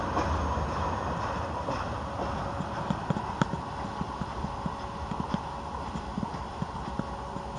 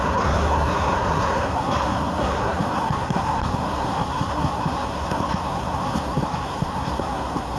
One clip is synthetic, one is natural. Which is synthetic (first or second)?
second